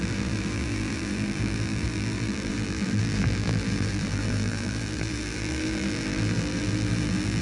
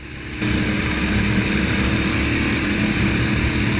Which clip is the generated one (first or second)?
first